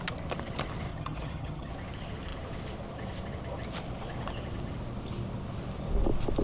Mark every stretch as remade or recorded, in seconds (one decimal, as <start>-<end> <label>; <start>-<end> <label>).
0.0-0.9 recorded; 0.9-1.7 remade; 1.7-6.4 recorded